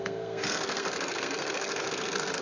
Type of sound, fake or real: fake